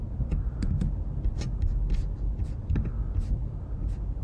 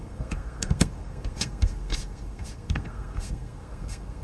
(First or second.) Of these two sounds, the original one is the first